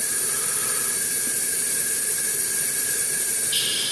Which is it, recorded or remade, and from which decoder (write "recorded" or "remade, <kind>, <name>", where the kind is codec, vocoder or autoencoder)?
remade, vocoder, BigVGAN v2